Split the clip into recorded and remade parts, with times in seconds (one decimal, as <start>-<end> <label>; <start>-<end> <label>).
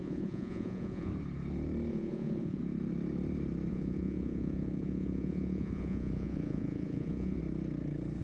0.0-1.1 remade; 1.1-1.9 recorded; 1.9-2.6 remade; 2.6-3.7 recorded; 3.7-7.4 remade; 7.4-8.2 recorded